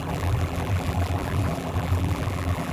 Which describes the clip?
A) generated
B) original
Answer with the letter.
A